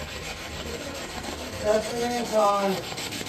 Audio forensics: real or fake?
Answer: fake